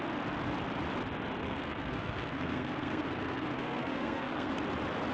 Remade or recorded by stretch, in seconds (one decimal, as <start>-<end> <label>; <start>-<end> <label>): 0.0-1.4 recorded; 1.4-4.5 remade; 4.5-5.1 recorded